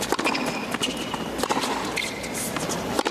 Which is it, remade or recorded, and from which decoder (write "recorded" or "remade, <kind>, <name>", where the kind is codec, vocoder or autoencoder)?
recorded